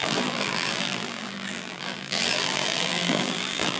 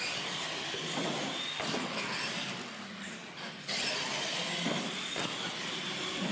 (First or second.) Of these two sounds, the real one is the second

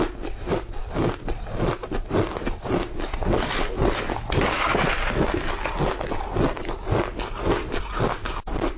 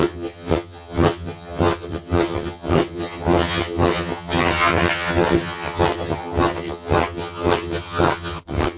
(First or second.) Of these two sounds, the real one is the first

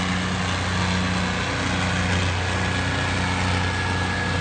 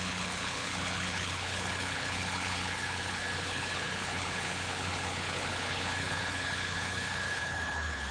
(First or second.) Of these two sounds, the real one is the first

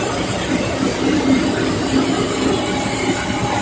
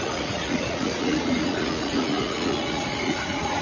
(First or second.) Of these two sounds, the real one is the first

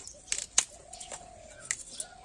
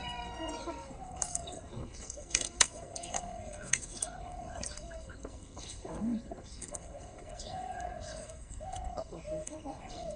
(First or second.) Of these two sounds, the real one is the first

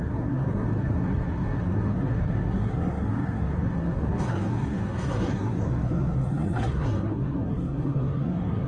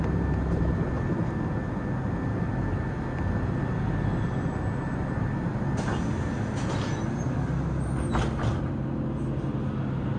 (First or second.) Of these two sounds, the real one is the second